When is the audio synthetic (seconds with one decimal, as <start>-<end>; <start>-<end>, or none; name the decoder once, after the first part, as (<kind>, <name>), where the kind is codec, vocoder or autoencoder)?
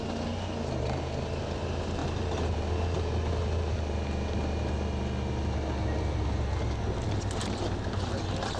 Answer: none